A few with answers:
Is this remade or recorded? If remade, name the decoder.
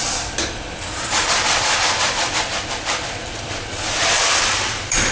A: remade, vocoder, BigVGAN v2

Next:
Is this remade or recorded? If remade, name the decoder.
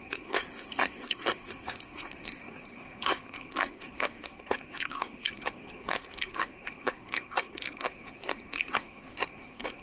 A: remade, codec, SNAC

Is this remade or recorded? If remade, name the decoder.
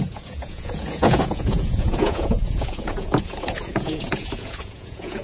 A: remade, vocoder, Vocos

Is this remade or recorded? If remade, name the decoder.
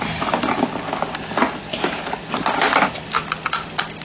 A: recorded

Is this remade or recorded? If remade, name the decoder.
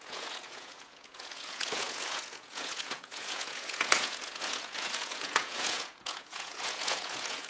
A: remade, vocoder, Vocos